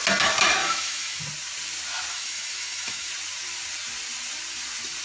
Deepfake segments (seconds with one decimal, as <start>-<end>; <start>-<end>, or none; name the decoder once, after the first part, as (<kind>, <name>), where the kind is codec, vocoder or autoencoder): 0.6-1.2 (autoencoder, DAC-VAE); 2.1-3.1